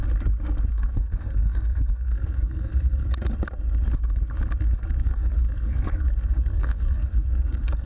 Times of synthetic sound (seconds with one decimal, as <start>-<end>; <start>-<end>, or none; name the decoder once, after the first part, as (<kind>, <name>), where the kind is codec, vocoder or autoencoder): 0.7-3.0 (codec, SNAC); 5.0-7.9